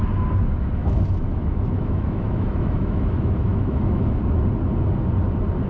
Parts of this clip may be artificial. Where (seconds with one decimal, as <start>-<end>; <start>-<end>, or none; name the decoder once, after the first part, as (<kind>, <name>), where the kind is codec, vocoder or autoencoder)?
0.8-4.2 (autoencoder, DAC-VAE)